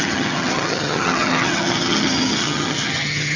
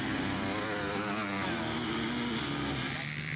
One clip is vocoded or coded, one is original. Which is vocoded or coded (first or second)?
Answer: first